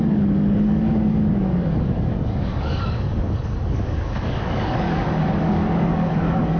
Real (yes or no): no